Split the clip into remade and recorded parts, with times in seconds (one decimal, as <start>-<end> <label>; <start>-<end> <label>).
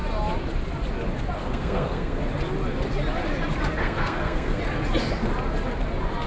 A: 0.0-1.4 recorded; 1.4-2.2 remade; 2.2-3.8 recorded; 3.8-4.6 remade; 4.6-6.3 recorded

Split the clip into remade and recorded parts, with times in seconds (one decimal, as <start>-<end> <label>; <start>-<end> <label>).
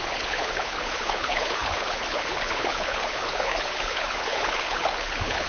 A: 0.0-5.5 remade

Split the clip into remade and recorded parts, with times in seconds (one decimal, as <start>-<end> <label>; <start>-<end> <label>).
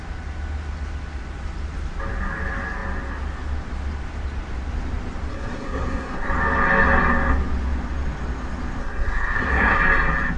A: 0.0-5.3 recorded; 5.3-6.3 remade; 6.3-8.8 recorded; 8.8-9.8 remade; 9.8-10.4 recorded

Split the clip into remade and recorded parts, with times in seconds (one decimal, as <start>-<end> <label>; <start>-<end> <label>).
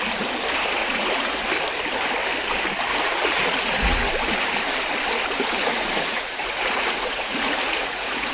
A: 0.0-0.8 recorded; 0.8-1.4 remade; 1.4-2.9 recorded; 2.9-4.1 remade; 4.1-5.6 recorded; 5.6-8.3 remade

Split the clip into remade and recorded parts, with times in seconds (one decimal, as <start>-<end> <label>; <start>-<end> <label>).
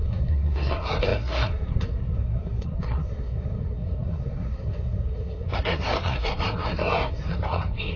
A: 0.0-8.0 remade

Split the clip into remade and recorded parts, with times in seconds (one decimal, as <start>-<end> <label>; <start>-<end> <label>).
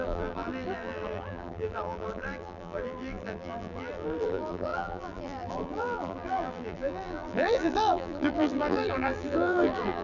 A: 0.0-10.0 remade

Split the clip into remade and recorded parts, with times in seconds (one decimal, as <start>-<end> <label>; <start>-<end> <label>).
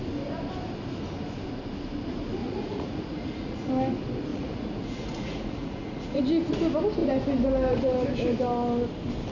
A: 0.0-2.4 recorded; 2.4-3.7 remade; 3.7-4.3 recorded; 4.3-6.2 remade; 6.2-9.3 recorded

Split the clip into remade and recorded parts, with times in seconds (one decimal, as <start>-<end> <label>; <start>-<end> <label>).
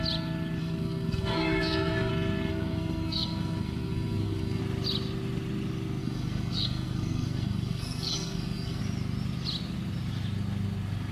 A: 0.0-0.6 recorded; 0.6-2.1 remade; 2.1-2.5 recorded; 2.5-4.6 remade; 4.6-6.0 recorded; 6.0-8.8 remade; 8.8-11.1 recorded